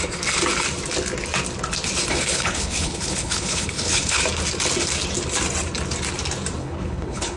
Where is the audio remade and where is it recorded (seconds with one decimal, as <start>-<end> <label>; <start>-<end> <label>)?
0.0-2.1 recorded; 2.1-4.2 remade; 4.2-6.6 recorded; 6.6-7.4 remade